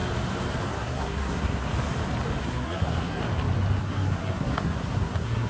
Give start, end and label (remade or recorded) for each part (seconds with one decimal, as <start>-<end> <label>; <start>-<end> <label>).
0.0-0.7 recorded; 0.7-1.7 remade; 1.7-2.4 recorded; 2.4-3.2 remade; 3.2-3.8 recorded; 3.8-5.5 remade